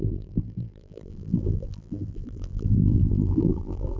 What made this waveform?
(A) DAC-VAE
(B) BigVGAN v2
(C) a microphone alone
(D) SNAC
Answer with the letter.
B